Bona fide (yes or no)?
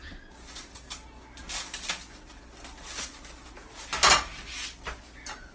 yes